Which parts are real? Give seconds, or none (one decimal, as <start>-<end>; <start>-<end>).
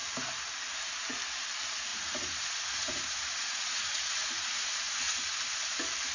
0.0-1.9; 5.4-6.1